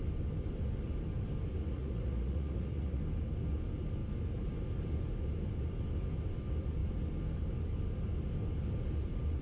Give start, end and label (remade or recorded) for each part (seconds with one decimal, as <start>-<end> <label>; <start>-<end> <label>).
0.0-1.6 recorded; 1.6-3.0 remade; 3.0-9.4 recorded